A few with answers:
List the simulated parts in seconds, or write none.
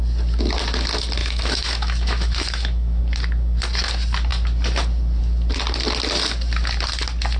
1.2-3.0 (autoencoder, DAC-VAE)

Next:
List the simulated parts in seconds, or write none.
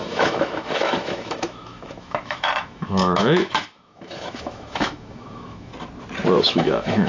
0.0-5.7 (autoencoder, DAC-VAE); 6.4-7.1